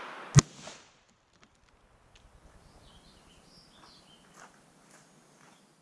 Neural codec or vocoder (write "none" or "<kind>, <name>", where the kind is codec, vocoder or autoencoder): none